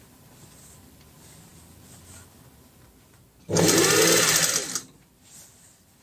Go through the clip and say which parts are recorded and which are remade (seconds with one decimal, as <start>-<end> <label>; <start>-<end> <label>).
0.0-6.0 recorded